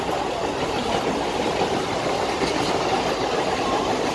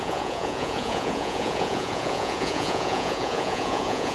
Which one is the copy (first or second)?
second